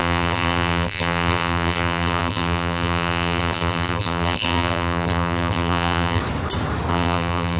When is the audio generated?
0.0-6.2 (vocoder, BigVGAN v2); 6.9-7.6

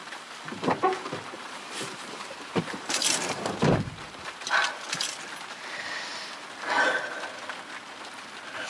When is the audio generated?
0.0-4.7 (vocoder, BigVGAN v2)

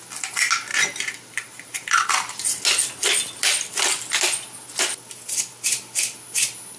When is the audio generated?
0.7-2.6 (vocoder, BigVGAN v2)

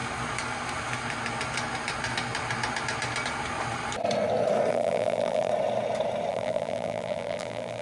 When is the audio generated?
4.7-5.5 (vocoder, BigVGAN v2); 6.3-7.8